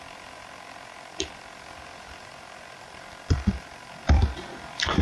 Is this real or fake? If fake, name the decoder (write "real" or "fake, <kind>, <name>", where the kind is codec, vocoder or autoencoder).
fake, vocoder, BigVGAN v2